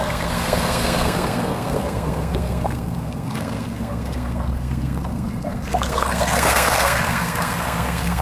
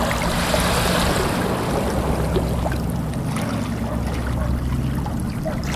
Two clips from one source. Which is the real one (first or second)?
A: second